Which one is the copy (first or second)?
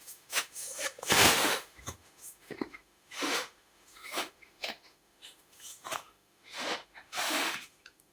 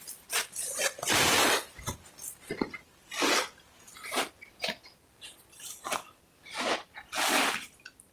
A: first